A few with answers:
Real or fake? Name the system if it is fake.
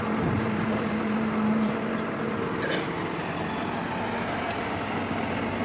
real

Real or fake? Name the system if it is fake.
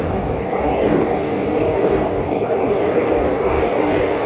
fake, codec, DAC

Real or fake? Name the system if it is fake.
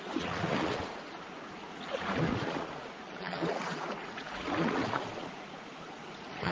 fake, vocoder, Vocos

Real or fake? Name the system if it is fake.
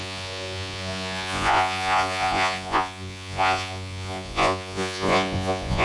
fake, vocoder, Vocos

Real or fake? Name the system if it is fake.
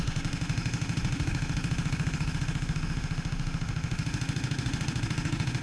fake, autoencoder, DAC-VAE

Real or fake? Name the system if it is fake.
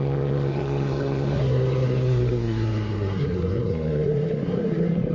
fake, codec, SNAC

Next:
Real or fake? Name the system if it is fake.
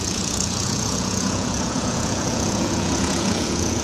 fake, vocoder, Vocos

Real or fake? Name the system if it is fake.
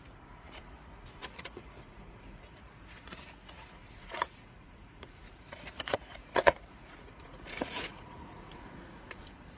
fake, vocoder, Vocos